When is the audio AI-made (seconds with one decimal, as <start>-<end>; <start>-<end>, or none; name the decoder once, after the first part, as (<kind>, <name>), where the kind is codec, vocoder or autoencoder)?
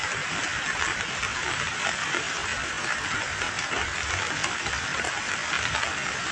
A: none